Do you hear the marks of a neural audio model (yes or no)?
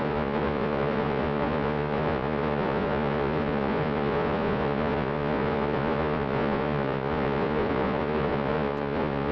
yes